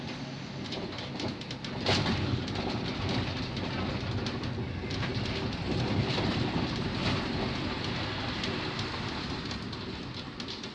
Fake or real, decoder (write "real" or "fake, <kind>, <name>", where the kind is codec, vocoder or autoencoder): real